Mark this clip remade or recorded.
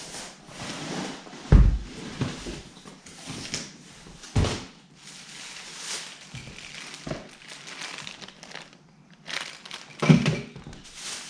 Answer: recorded